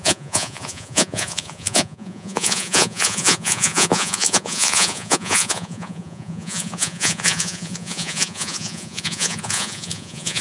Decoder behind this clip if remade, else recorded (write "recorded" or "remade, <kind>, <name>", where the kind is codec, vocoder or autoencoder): remade, vocoder, Vocos